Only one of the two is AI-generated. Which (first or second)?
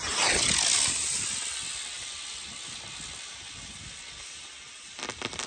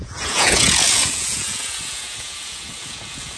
second